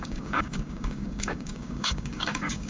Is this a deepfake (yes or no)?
yes